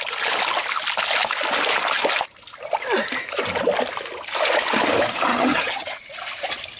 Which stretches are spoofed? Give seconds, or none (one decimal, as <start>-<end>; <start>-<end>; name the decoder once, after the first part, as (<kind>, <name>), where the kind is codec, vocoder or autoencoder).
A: 5.3-6.0 (vocoder, HiFi-GAN)